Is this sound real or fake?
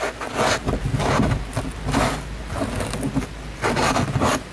real